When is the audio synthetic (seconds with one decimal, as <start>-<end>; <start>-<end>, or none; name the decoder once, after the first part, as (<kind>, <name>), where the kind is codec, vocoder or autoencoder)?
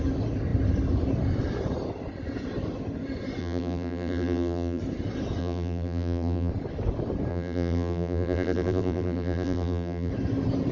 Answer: 3.4-4.8 (vocoder, BigVGAN v2); 5.4-6.5; 7.3-10.1